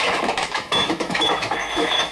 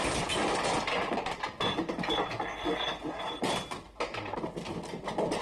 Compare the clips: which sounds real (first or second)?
second